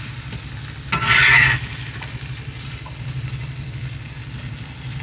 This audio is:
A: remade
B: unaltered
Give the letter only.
B